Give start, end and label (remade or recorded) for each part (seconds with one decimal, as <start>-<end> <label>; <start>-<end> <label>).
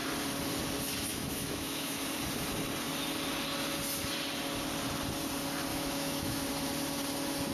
0.0-1.1 recorded; 1.1-2.0 remade; 2.0-5.7 recorded; 5.7-6.4 remade; 6.4-7.5 recorded